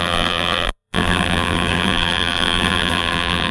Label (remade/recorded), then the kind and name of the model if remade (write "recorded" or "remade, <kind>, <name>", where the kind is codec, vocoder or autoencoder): remade, vocoder, BigVGAN v2